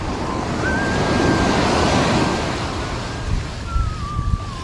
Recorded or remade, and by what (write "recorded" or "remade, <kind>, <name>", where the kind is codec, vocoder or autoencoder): recorded